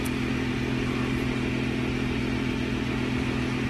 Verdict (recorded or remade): recorded